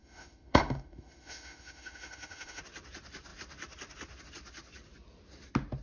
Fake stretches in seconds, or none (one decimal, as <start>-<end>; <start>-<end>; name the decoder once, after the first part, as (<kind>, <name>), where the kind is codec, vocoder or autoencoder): 0.0-2.6 (autoencoder, DAC-VAE)